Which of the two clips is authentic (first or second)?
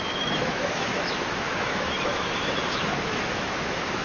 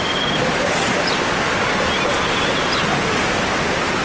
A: second